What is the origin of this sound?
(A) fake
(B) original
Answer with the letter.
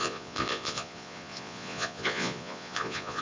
A